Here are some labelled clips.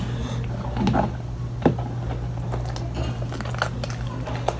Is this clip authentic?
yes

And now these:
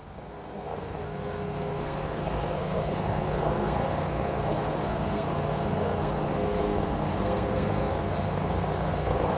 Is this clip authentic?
no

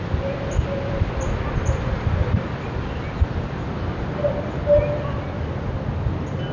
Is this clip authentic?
yes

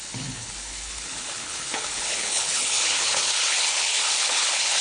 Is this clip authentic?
no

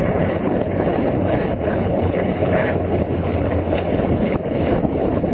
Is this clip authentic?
no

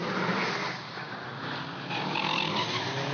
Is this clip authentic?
yes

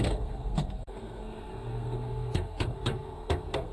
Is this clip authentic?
no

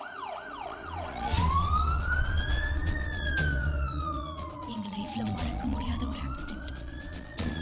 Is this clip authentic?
no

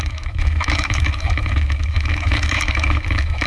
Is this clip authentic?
no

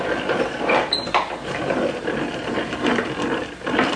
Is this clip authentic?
no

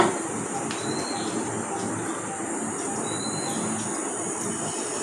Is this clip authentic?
yes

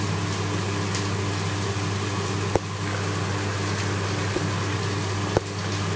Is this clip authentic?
yes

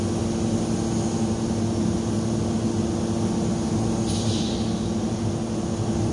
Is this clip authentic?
yes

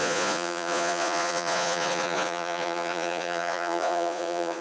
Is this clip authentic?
no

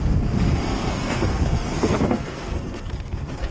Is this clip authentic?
no